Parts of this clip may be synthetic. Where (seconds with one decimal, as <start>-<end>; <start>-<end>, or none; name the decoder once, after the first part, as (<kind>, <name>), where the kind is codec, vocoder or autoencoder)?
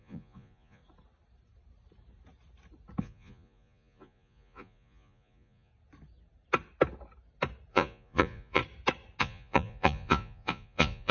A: 0.0-0.8 (vocoder, Vocos); 3.0-5.7; 7.7-8.6; 9.2-11.1